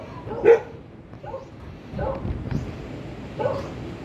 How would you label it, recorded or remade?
remade